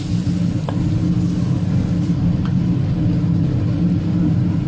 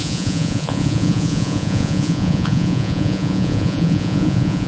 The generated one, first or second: second